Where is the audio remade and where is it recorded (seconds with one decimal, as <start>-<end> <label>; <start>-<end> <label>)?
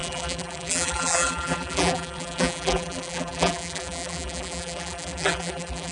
0.0-5.9 remade